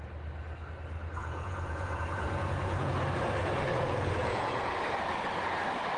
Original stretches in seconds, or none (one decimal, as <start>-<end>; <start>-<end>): 0.0-1.2; 2.9-3.4; 4.7-6.0